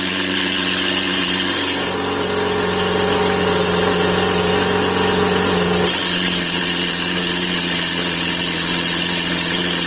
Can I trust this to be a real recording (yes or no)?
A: yes